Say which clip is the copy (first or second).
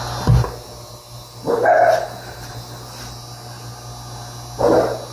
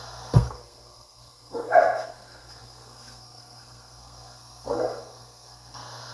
second